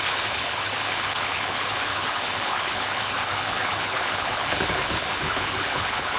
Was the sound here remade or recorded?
remade